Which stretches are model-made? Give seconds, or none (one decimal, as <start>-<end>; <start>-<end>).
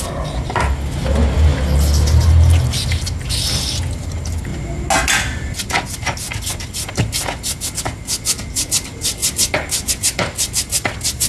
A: none